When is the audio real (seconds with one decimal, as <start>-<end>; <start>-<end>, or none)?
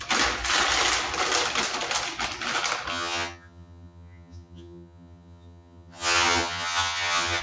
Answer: 0.0-2.9